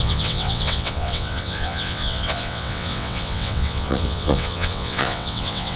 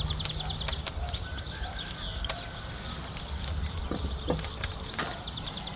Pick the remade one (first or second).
first